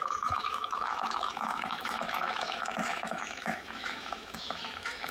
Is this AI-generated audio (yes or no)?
yes